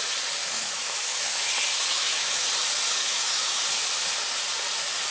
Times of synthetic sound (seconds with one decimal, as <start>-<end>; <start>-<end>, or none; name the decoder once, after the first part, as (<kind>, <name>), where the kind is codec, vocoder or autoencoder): 0.4-1.5 (autoencoder, DAC-VAE); 1.9-2.5; 3.0-3.6